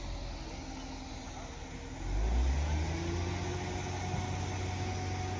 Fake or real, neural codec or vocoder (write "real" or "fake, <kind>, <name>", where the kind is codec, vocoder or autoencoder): real